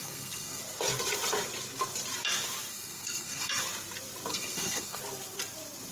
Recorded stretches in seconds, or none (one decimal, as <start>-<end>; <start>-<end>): 0.6-2.7; 3.6-4.3; 5.0-5.9